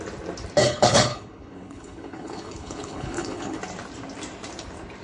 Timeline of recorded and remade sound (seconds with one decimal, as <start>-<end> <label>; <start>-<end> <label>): 0.0-0.6 recorded; 0.6-3.6 remade; 3.6-5.0 recorded